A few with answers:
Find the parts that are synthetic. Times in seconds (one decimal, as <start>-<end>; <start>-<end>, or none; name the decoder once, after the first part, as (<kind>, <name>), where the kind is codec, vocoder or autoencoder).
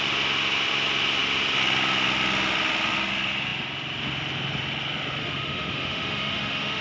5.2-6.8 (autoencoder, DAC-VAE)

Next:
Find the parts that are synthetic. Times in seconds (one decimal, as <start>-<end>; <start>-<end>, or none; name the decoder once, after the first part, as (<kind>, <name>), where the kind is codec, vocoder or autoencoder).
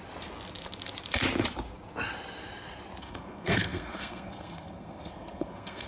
3.0-5.9 (codec, SNAC)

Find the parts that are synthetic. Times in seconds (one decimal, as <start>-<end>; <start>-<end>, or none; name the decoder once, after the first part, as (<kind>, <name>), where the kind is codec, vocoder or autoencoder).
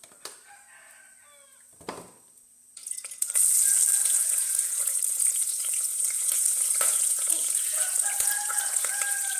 2.7-3.3 (vocoder, Vocos); 4.0-9.4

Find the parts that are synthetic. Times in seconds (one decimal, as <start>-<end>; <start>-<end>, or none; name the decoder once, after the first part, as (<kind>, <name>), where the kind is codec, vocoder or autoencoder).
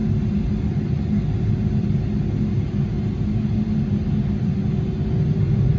none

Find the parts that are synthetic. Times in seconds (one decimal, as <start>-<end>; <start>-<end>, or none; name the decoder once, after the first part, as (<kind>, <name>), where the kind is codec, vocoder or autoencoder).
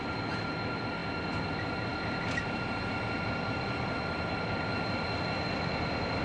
none